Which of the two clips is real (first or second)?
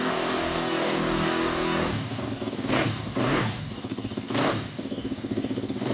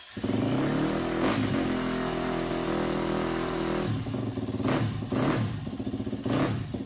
second